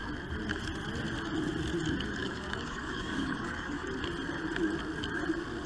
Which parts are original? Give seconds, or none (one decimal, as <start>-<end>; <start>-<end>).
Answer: 0.0-2.2; 3.9-5.7